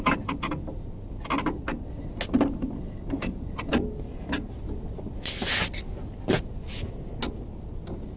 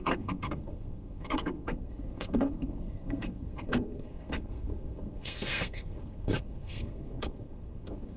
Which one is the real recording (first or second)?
first